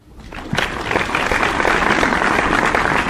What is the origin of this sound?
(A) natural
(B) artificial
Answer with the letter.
A